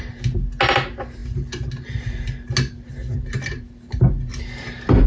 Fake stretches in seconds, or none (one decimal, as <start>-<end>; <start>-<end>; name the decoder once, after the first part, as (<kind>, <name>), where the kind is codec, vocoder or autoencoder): none